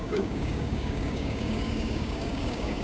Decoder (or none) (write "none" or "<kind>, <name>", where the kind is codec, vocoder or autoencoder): codec, DAC